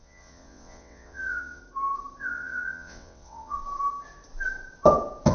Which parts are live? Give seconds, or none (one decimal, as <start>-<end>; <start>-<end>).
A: 1.6-2.2; 3.6-5.3